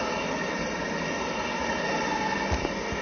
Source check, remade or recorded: recorded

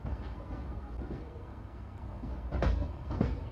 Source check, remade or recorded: remade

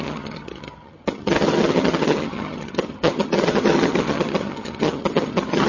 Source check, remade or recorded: remade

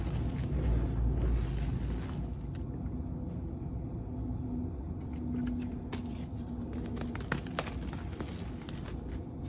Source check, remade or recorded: recorded